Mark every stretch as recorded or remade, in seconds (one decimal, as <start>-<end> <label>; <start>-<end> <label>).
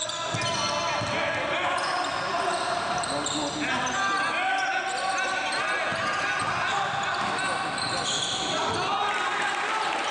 0.0-10.1 recorded